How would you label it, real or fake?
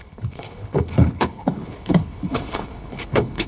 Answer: fake